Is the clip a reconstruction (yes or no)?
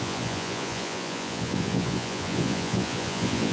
yes